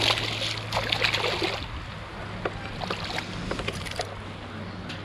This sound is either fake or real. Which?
real